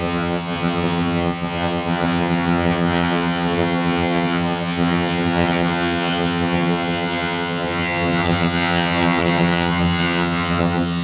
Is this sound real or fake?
fake